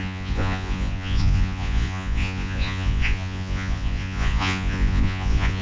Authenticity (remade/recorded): remade